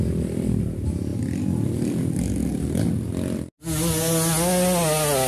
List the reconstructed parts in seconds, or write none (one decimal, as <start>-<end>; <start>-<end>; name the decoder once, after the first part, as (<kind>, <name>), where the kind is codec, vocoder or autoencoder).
none